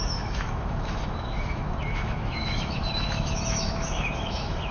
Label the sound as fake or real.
fake